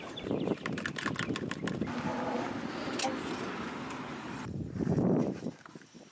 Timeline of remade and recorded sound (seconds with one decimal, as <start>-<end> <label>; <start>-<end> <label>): 0.0-4.1 recorded; 4.1-6.1 remade